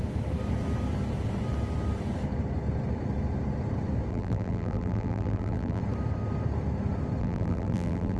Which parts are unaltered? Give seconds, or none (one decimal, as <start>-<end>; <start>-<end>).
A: 0.0-4.1; 5.8-7.2